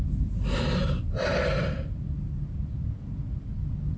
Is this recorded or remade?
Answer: recorded